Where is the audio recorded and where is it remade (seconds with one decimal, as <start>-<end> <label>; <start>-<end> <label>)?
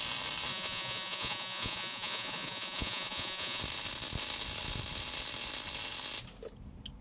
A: 0.0-0.5 recorded; 0.5-3.6 remade; 3.6-7.0 recorded